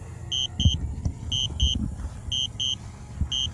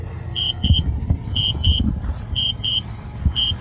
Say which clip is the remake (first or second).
second